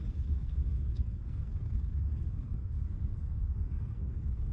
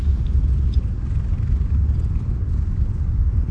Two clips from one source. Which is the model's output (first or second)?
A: first